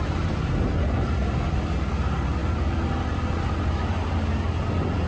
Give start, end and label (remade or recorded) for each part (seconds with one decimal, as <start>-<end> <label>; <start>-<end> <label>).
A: 0.0-5.1 recorded